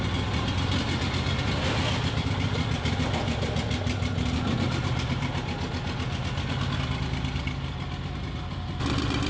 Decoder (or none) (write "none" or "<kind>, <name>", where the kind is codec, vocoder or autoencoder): none